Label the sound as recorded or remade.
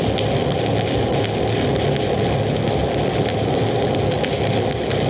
recorded